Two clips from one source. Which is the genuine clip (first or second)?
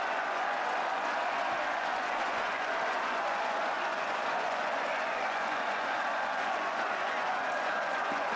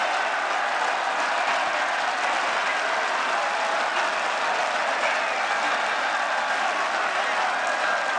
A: second